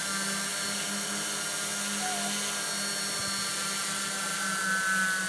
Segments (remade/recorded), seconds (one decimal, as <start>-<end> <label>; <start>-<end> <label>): 0.0-5.3 recorded